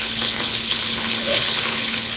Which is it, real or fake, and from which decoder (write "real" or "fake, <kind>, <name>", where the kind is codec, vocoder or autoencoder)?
fake, codec, HILCodec